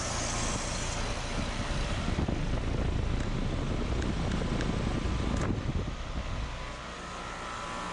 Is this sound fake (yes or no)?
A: no